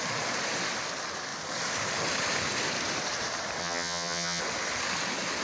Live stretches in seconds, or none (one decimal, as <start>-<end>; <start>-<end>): 0.0-3.6; 4.4-5.4